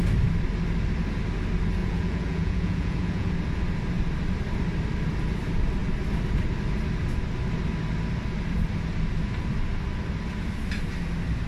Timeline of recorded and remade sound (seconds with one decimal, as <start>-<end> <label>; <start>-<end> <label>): 0.0-1.8 recorded; 1.8-3.3 remade; 3.3-11.5 recorded